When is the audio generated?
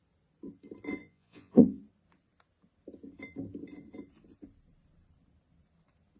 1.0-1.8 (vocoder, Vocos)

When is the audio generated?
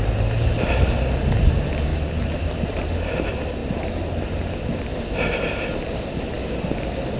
1.9-2.4 (vocoder, BigVGAN v2); 3.6-4.1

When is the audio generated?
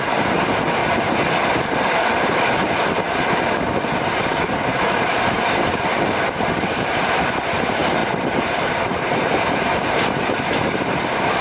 0.0-0.8 (vocoder, BigVGAN v2); 4.7-8.0; 8.7-11.4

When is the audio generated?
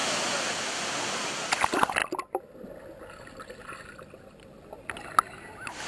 none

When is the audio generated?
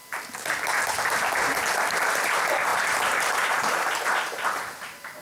none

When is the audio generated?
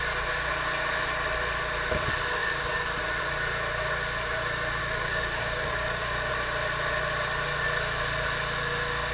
4.8-6.3 (codec, DAC)